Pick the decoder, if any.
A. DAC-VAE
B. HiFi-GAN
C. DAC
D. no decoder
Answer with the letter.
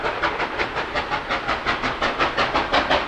D